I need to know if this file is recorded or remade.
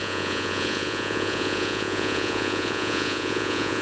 remade